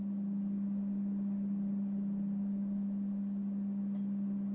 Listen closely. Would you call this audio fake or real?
real